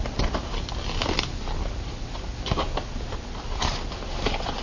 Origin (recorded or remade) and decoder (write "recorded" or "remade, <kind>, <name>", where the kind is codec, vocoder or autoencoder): recorded